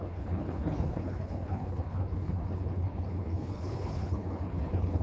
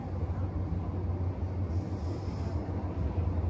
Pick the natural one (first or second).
second